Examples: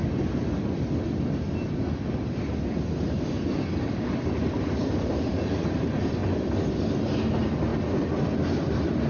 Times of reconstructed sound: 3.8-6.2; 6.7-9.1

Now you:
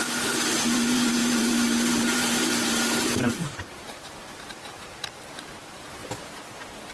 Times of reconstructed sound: 0.0-6.0

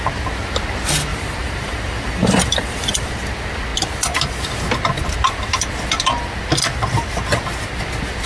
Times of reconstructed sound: 1.1-3.2

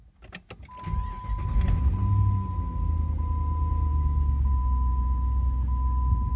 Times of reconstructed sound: none

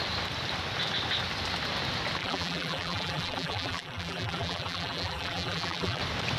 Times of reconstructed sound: 2.2-6.0

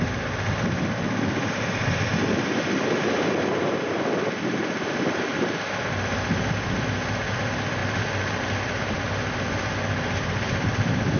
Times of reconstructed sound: none

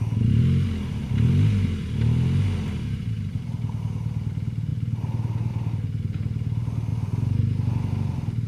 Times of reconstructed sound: none

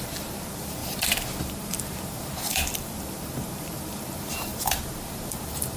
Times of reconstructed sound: 0.0-5.8